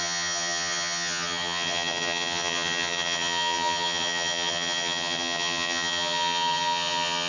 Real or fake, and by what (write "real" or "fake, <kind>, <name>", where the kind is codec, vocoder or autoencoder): fake, vocoder, HiFi-GAN